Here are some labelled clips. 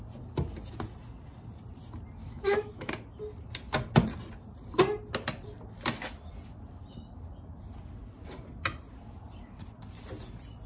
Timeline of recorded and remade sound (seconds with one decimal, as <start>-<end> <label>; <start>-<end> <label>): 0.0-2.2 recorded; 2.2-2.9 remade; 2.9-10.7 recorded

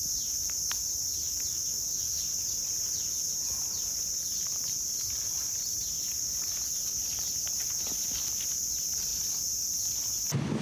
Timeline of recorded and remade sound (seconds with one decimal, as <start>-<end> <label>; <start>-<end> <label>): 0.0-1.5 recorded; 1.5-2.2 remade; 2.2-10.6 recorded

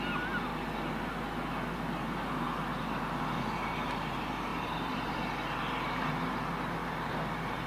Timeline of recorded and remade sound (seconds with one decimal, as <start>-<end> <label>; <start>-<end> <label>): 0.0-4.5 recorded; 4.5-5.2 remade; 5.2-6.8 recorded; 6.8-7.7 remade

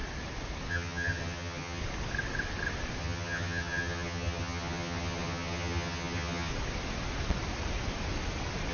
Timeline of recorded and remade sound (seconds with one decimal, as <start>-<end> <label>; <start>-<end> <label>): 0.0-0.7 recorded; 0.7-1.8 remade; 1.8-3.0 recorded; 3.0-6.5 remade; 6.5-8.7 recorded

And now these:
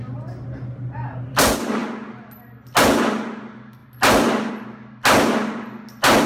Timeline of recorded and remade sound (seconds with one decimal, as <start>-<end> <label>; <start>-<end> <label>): 0.0-6.3 recorded

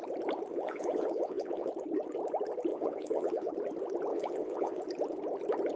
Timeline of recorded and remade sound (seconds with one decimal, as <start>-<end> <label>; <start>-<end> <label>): 0.0-0.5 recorded; 0.5-1.7 remade; 1.7-2.7 recorded; 2.7-3.5 remade; 3.5-4.1 recorded; 4.1-4.8 remade; 4.8-5.8 recorded

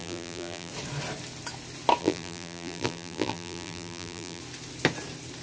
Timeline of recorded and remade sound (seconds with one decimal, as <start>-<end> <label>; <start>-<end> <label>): 0.0-0.7 remade; 0.7-2.0 recorded; 2.0-4.4 remade; 4.4-5.4 recorded

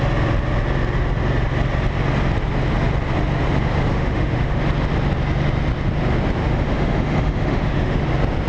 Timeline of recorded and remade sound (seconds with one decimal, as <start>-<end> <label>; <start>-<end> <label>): 0.0-3.9 recorded; 3.9-4.6 remade; 4.6-6.4 recorded; 6.4-8.0 remade; 8.0-8.5 recorded